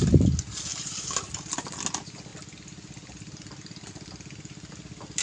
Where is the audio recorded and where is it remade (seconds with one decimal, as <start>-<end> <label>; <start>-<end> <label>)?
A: 0.0-0.7 recorded; 0.7-1.3 remade; 1.3-5.2 recorded